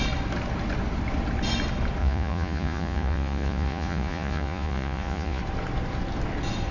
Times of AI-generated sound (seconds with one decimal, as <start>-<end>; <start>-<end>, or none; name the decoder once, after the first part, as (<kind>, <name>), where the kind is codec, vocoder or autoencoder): 2.0-5.4 (vocoder, Vocos)